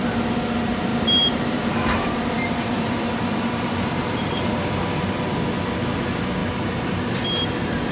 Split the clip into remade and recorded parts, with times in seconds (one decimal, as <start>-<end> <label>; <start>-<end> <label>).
0.0-0.9 recorded; 0.9-4.7 remade; 4.7-6.4 recorded; 6.4-7.1 remade; 7.1-7.9 recorded